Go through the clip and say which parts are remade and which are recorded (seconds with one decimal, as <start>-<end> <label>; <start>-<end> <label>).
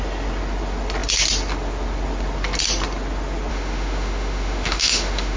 0.0-3.5 recorded; 3.5-5.4 remade